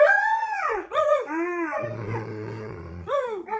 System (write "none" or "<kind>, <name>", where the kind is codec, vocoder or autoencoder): vocoder, Vocos